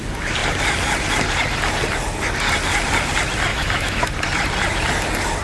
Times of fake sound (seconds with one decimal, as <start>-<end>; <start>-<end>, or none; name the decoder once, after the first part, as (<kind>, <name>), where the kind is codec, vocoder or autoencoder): 3.5-4.1 (autoencoder, DAC-VAE)